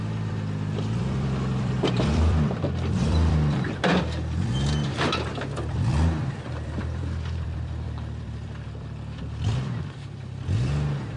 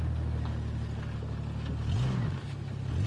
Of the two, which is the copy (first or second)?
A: first